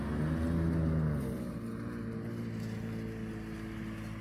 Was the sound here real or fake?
real